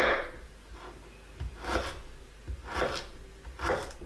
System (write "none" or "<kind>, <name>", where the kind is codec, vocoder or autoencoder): none